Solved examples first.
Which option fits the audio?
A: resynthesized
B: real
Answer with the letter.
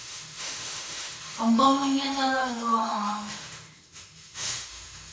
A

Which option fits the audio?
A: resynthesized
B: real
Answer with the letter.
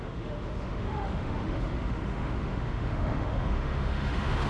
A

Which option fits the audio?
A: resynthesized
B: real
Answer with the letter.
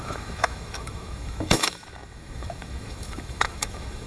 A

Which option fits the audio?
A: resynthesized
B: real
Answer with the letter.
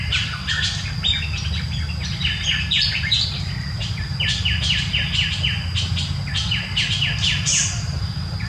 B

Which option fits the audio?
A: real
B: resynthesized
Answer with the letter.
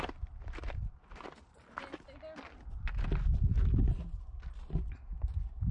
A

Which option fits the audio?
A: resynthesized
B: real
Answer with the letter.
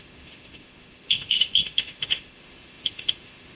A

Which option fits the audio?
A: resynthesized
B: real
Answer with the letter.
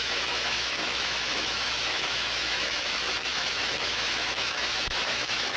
A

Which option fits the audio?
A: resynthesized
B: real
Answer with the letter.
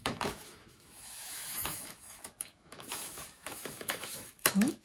A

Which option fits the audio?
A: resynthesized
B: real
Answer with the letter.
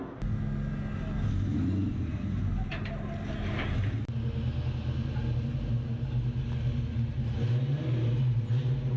B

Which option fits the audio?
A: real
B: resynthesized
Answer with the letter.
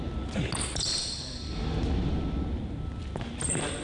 A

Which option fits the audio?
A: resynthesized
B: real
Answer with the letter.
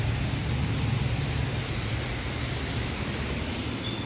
B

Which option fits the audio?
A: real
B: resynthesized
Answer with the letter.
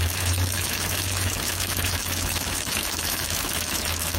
B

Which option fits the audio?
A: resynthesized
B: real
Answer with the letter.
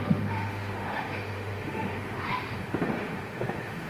A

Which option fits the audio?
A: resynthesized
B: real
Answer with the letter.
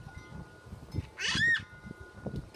B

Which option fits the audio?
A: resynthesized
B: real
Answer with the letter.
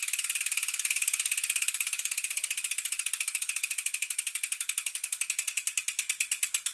B